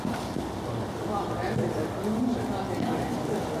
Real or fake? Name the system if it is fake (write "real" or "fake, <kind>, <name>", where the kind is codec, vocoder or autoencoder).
real